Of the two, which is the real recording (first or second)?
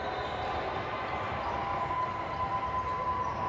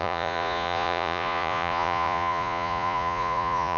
first